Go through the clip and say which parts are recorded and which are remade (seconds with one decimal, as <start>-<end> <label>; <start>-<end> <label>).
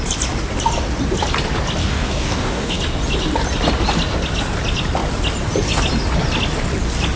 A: 0.0-1.8 recorded; 1.8-2.8 remade; 2.8-7.2 recorded